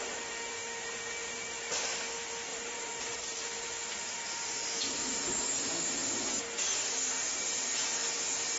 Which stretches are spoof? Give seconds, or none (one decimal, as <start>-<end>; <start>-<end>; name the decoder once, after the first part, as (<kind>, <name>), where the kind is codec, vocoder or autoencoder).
2.5-3.9 (vocoder, BigVGAN v2)